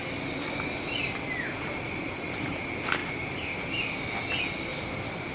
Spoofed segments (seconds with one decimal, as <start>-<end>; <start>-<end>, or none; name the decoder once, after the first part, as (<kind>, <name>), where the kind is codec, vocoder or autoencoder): 1.5-2.6 (vocoder, BigVGAN v2); 3.0-3.6; 4.7-5.3